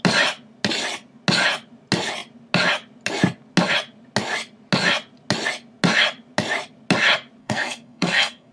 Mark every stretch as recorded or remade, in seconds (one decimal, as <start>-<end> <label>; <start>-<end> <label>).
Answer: 0.0-7.4 recorded; 7.4-8.5 remade